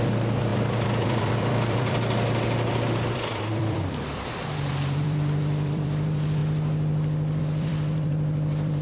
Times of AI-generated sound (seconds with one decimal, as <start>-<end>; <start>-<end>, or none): 0.0-6.4; 7.4-8.8